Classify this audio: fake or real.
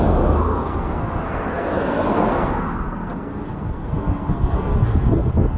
fake